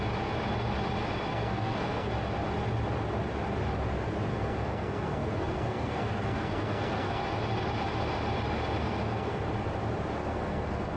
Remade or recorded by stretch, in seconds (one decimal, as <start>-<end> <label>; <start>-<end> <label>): 0.0-1.3 recorded; 1.3-2.1 remade; 2.1-4.3 recorded; 4.3-7.2 remade; 7.2-8.8 recorded; 8.8-9.4 remade; 9.4-10.2 recorded; 10.2-11.0 remade